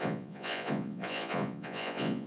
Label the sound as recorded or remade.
remade